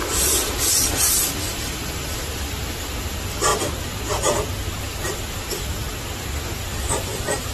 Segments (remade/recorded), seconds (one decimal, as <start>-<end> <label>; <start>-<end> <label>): 0.0-7.5 recorded